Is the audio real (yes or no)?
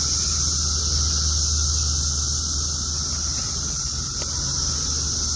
yes